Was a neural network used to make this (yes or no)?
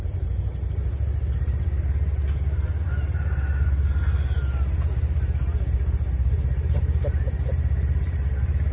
no